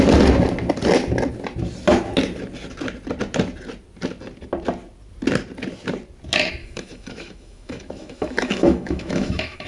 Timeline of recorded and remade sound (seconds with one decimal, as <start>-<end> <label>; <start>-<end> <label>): 0.0-6.6 recorded; 6.6-9.7 remade